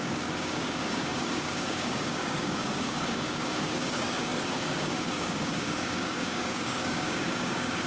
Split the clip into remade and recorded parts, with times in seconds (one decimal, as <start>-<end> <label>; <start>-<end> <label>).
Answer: 0.0-7.9 remade